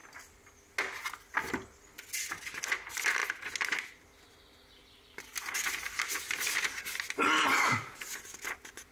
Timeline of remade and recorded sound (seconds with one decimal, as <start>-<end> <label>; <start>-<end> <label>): 0.0-8.9 recorded